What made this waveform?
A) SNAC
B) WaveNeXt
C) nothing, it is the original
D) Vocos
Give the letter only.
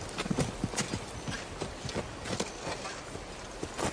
C